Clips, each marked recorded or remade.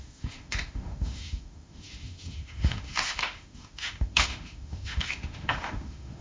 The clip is remade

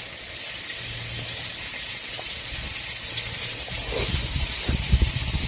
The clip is recorded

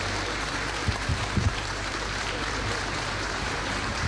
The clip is remade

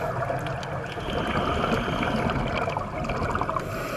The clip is recorded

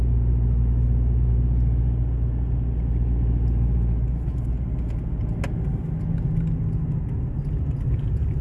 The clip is recorded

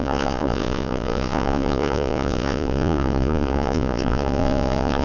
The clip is remade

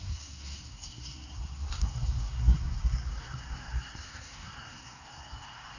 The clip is remade